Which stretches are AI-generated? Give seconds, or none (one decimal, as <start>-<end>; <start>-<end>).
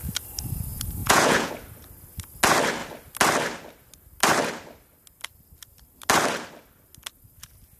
1.0-1.5